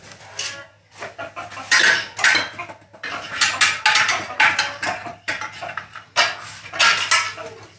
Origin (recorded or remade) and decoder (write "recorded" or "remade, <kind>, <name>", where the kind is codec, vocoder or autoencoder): recorded